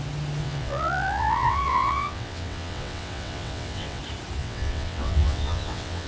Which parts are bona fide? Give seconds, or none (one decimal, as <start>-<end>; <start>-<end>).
0.0-0.4; 4.0-4.4